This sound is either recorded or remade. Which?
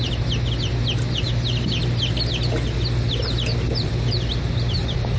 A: recorded